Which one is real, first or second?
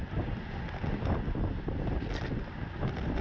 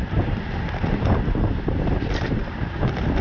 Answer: first